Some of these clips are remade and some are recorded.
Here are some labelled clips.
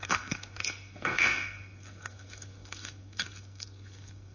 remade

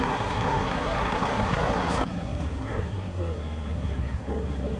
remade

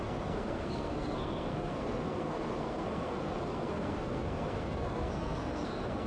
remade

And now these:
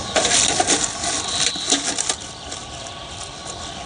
recorded